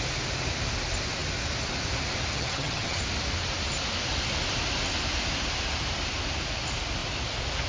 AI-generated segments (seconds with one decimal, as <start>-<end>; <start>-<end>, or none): 2.3-3.0